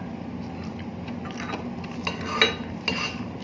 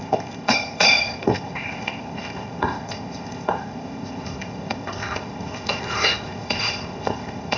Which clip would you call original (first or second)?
first